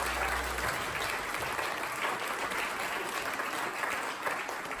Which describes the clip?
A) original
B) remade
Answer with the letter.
A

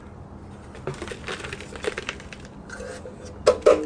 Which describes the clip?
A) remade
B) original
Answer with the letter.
B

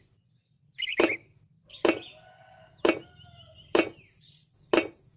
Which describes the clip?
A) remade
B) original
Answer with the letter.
B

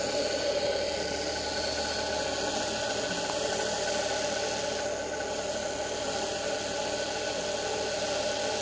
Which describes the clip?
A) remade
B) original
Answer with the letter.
B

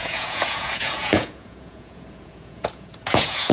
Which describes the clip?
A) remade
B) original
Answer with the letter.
A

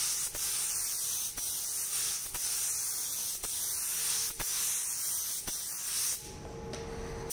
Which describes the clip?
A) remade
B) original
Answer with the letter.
B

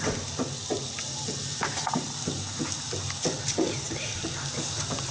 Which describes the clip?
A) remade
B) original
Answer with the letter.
B